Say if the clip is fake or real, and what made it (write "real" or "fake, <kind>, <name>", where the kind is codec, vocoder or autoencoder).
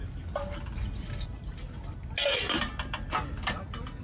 real